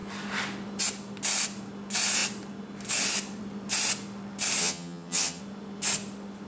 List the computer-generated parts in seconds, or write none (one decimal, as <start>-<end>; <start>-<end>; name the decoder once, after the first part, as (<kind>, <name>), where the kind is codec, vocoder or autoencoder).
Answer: 4.6-5.4 (vocoder, HiFi-GAN)